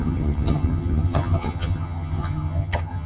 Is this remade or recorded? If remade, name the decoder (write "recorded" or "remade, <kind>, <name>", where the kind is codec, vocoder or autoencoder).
remade, vocoder, HiFi-GAN